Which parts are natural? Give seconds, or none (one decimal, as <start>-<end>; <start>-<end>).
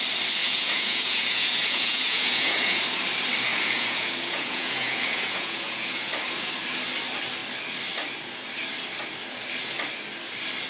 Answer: 0.0-0.4; 2.8-3.5; 6.1-10.7